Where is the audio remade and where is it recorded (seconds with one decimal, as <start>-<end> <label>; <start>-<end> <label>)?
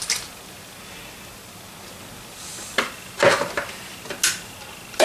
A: 0.0-5.0 recorded